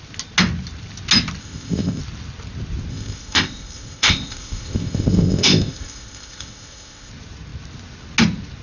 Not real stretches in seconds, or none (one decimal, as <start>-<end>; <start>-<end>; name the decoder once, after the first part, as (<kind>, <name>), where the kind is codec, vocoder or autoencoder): 1.4-2.0 (codec, ZipCodec); 2.9-7.1

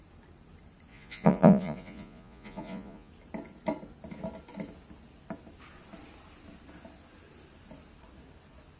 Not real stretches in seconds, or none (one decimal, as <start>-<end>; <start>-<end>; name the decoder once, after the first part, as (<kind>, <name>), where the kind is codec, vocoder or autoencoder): 0.9-3.1 (vocoder, Vocos)

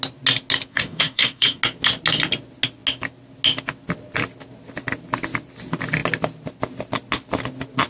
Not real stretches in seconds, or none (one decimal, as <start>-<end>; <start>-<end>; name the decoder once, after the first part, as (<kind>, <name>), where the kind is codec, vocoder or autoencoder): 0.7-1.6 (codec, DAC)

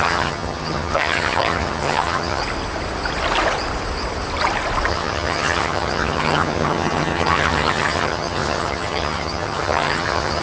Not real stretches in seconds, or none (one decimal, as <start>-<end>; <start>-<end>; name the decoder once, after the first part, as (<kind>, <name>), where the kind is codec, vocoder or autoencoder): 0.0-2.4 (vocoder, HiFi-GAN); 4.9-10.4